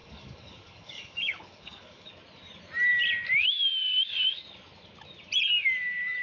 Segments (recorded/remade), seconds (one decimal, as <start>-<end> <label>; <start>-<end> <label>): 0.0-2.1 remade; 2.1-6.2 recorded